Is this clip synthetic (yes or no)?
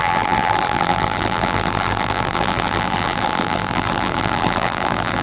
yes